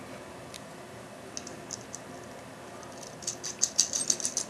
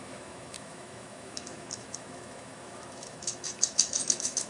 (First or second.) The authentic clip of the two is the first